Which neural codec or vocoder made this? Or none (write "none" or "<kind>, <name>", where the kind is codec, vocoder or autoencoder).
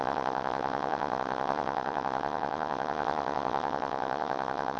vocoder, WaveNeXt